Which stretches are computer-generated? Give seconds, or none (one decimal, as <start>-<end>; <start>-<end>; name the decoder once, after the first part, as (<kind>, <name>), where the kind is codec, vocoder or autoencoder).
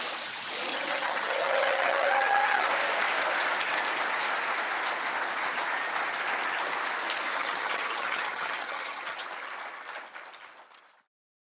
0.7-2.7 (vocoder, HiFi-GAN); 7.4-9.2